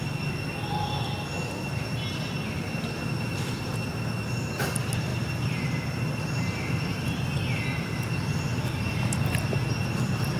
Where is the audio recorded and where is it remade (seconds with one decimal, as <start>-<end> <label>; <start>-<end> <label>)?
0.0-10.4 recorded